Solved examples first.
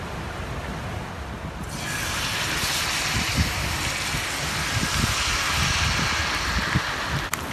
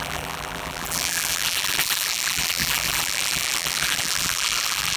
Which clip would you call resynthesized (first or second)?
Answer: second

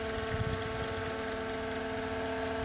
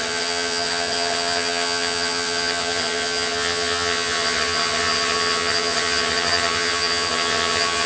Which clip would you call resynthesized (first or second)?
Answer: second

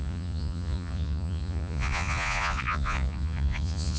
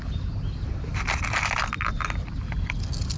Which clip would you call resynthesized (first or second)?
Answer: first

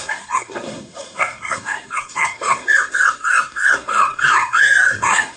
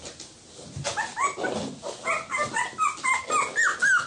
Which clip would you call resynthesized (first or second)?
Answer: first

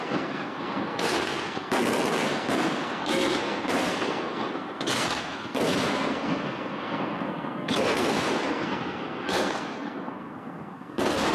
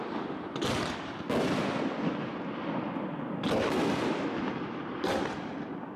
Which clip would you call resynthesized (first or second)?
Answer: first